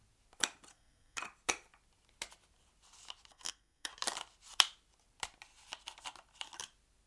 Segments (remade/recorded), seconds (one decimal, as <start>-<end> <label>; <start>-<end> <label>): 0.0-0.7 recorded; 0.7-1.2 remade; 1.2-3.3 recorded; 3.3-3.9 remade; 3.9-7.1 recorded